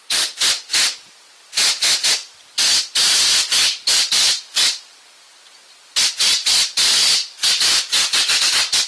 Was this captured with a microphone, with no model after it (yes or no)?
yes